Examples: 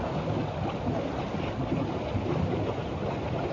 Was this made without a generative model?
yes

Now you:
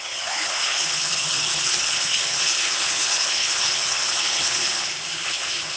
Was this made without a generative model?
no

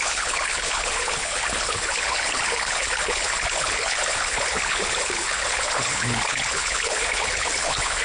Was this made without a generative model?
no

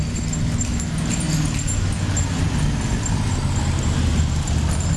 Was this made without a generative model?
yes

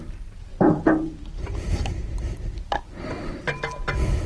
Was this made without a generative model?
yes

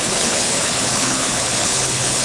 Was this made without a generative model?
no